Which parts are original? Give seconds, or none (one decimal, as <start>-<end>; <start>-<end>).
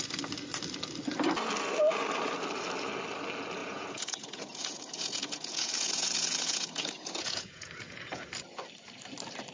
0.0-3.6; 8.3-9.5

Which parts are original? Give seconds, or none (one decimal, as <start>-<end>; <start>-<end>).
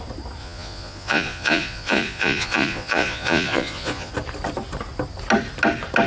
0.0-0.4; 4.1-6.1